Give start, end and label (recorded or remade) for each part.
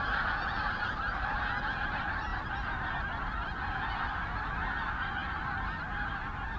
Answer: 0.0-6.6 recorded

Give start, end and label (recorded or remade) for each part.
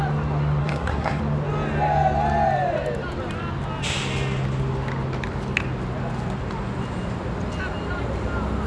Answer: 0.0-0.6 recorded; 0.6-1.2 remade; 1.2-8.7 recorded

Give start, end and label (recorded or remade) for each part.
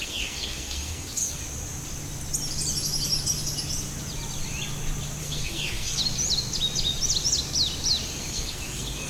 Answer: 0.0-1.4 remade; 1.4-5.2 recorded; 5.2-6.0 remade; 6.0-8.2 recorded; 8.2-9.1 remade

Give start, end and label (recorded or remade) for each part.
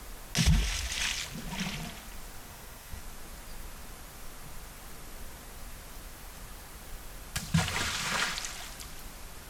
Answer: 0.0-2.5 recorded; 2.5-3.0 remade; 3.0-9.5 recorded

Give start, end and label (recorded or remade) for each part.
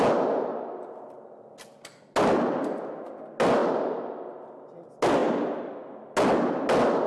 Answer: 0.0-7.1 recorded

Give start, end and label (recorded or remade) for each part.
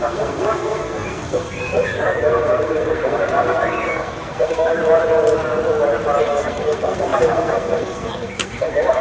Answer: 0.0-4.8 remade; 4.8-6.2 recorded; 6.2-9.0 remade